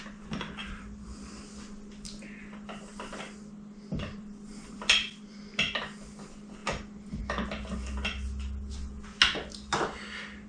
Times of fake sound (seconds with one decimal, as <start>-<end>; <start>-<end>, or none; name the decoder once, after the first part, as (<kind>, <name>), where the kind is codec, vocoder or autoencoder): 0.6-1.3 (vocoder, BigVGAN v2); 4.5-5.4